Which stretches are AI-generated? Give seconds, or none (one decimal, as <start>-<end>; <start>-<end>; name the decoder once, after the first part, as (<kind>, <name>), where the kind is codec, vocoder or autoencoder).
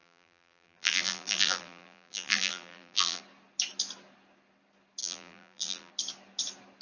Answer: 0.0-3.2 (vocoder, BigVGAN v2); 5.0-5.9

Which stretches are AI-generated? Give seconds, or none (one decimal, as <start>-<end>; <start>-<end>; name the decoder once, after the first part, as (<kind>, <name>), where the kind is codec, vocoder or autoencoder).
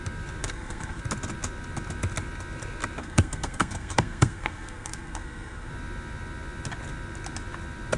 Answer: 0.4-1.0 (codec, SNAC); 3.0-5.7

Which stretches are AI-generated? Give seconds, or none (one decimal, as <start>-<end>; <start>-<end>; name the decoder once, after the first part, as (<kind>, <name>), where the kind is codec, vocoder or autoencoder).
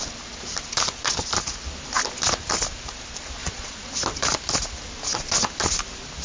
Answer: 3.4-3.9 (vocoder, Vocos)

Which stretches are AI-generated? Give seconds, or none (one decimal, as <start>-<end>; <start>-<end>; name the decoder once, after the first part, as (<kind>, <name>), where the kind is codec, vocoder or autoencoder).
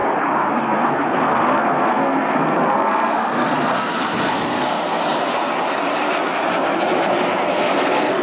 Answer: 0.5-5.0 (codec, SNAC); 7.5-8.2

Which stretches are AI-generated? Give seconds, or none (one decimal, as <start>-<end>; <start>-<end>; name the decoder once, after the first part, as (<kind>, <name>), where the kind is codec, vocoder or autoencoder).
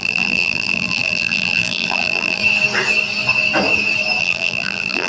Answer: 0.0-2.4 (vocoder, BigVGAN v2); 4.2-5.1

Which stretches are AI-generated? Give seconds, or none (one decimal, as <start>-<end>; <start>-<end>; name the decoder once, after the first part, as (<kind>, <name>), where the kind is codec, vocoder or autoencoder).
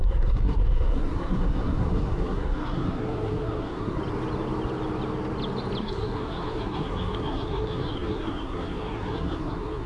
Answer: 0.0-4.0 (codec, SNAC); 5.8-9.9